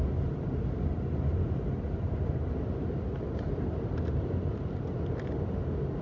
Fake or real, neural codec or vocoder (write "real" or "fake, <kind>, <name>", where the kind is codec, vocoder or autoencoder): real